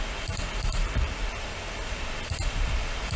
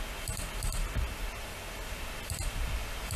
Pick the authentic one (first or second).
second